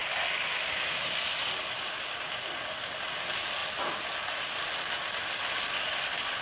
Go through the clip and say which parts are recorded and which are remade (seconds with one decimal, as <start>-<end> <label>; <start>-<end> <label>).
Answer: 0.0-6.4 recorded